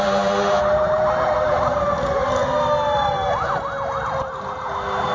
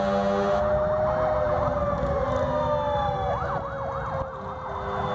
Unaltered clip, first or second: second